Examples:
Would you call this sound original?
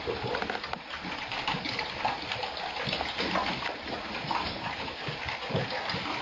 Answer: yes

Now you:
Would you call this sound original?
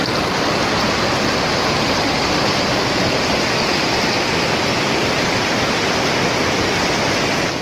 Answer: yes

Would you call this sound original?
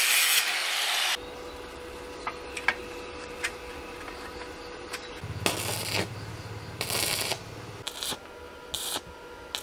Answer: yes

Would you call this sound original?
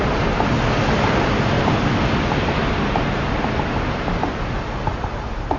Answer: yes